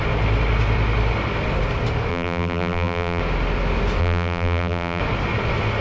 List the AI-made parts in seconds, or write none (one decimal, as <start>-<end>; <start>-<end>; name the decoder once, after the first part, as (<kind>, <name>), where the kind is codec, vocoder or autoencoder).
2.1-3.2 (vocoder, BigVGAN v2); 4.0-5.0